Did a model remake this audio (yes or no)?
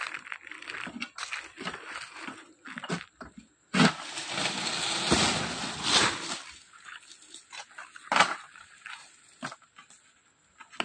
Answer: no